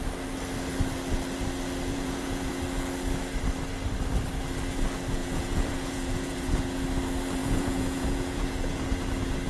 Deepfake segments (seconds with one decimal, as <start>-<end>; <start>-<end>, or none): 1.9-2.5; 5.2-6.6; 7.4-8.8